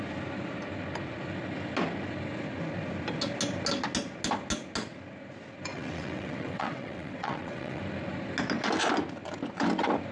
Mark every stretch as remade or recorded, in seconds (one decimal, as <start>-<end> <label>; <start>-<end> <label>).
0.0-5.7 recorded; 5.7-7.8 remade; 7.8-10.1 recorded